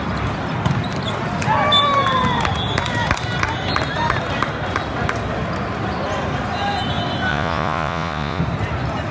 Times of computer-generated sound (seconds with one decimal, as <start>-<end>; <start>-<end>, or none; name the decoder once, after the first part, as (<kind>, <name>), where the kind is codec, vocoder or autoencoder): 7.3-8.4 (vocoder, Vocos)